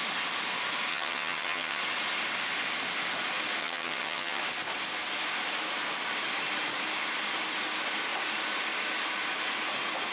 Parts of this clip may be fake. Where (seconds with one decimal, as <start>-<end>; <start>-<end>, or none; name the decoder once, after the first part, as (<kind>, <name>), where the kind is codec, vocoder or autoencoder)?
0.9-1.8 (vocoder, HiFi-GAN); 3.6-4.4